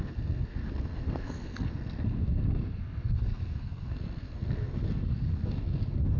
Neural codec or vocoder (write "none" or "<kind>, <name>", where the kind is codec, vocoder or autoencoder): codec, SNAC